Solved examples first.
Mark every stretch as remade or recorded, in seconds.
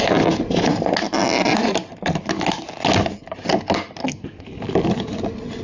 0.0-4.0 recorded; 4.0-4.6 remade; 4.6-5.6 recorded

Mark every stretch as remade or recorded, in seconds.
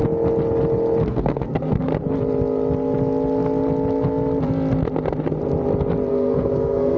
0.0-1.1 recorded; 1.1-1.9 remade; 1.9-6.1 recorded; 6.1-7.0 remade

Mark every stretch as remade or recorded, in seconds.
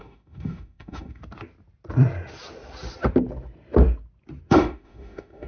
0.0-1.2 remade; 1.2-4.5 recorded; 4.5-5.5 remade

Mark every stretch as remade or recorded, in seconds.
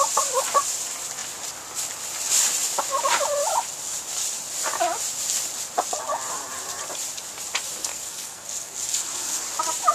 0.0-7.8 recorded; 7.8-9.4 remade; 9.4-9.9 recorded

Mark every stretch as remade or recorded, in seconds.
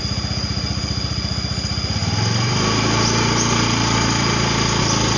0.0-5.2 recorded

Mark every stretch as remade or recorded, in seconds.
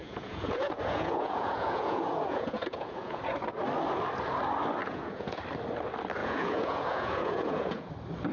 0.0-3.2 remade; 3.2-4.8 recorded; 4.8-5.4 remade; 5.4-6.2 recorded; 6.2-7.9 remade; 7.9-8.3 recorded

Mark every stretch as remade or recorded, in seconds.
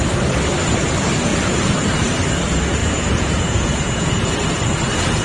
0.0-2.8 recorded; 2.8-4.4 remade; 4.4-5.2 recorded